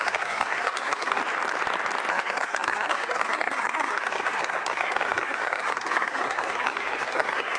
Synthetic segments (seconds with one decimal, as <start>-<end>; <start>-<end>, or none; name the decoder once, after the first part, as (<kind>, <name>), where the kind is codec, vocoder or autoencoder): 0.0-1.2 (codec, SNAC); 2.1-7.6